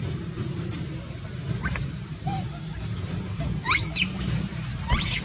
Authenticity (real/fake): fake